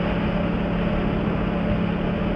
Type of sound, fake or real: real